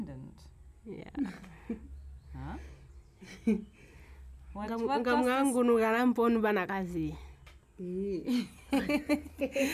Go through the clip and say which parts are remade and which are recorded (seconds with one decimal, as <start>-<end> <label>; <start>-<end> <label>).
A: 0.0-9.7 recorded

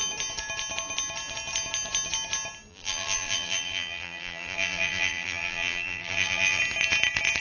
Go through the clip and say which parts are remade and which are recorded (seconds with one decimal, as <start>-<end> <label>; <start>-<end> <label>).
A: 0.0-2.7 recorded; 2.7-6.6 remade; 6.6-7.4 recorded

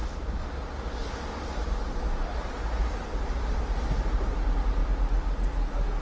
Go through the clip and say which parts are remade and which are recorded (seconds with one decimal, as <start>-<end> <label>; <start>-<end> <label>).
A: 0.0-2.8 recorded; 2.8-4.2 remade; 4.2-6.0 recorded

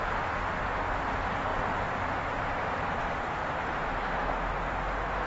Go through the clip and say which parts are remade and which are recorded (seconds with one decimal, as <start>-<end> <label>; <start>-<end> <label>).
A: 0.0-1.5 recorded; 1.5-2.7 remade; 2.7-3.4 recorded; 3.4-3.9 remade; 3.9-5.3 recorded

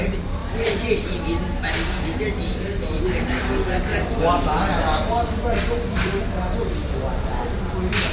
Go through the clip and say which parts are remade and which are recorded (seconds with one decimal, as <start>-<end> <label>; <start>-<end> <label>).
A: 0.0-0.4 recorded; 0.4-1.6 remade; 1.6-3.9 recorded; 3.9-6.2 remade; 6.2-6.8 recorded; 6.8-8.1 remade

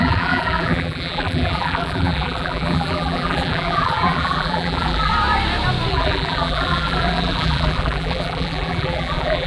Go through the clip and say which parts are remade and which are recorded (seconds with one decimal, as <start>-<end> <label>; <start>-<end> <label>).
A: 0.0-5.1 remade; 5.1-5.9 recorded; 5.9-9.5 remade